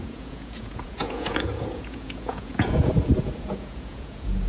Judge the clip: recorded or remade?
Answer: remade